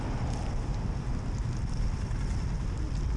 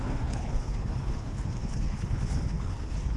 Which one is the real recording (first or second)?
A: first